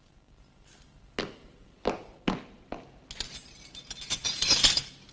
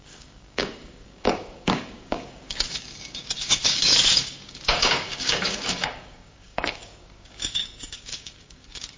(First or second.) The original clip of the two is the first